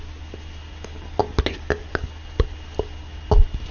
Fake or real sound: real